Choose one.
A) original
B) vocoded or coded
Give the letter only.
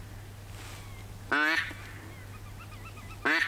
A